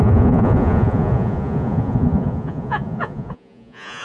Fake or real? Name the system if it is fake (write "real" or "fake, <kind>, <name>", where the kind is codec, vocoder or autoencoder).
fake, vocoder, Vocos